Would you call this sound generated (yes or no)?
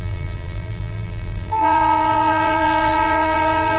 yes